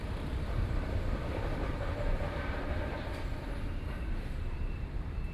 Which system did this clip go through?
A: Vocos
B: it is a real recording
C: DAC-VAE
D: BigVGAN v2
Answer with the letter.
D